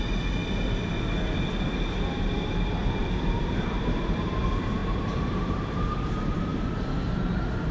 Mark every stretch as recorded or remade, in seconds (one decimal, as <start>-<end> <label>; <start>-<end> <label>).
0.0-0.4 remade; 0.4-1.9 recorded; 1.9-7.7 remade